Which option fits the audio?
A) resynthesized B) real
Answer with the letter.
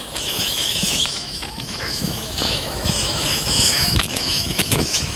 A